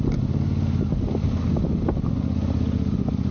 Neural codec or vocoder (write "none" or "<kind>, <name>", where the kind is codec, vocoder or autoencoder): none